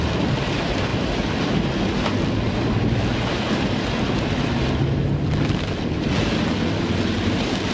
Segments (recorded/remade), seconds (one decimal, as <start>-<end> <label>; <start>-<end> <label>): 0.0-7.7 recorded